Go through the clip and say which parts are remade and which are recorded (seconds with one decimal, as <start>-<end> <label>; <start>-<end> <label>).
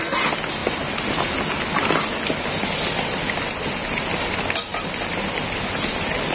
0.0-6.3 recorded